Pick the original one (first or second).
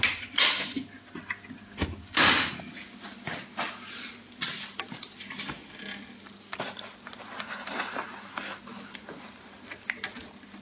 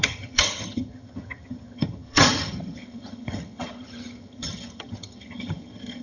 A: first